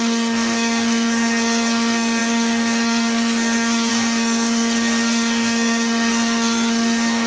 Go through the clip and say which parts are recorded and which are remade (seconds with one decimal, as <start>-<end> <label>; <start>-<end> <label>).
0.0-7.3 remade